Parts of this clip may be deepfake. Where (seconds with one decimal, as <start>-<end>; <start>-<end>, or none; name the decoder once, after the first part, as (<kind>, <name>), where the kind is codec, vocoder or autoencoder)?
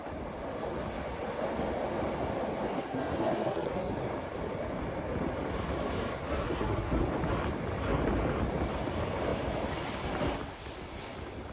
2.7-3.9 (codec, SNAC); 6.1-7.0